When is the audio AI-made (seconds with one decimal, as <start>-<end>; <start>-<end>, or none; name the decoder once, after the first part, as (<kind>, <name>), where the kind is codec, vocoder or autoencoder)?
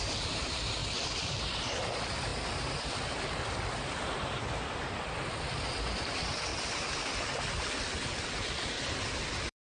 0.0-2.3 (vocoder, BigVGAN v2); 4.5-6.5; 8.5-9.7